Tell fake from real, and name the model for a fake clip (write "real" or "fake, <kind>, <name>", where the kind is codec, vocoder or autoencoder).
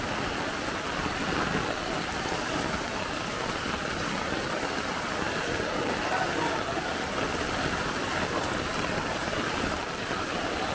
real